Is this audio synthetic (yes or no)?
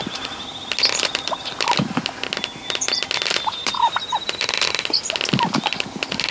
no